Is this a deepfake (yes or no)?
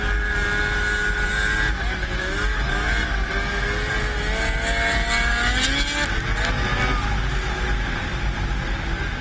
no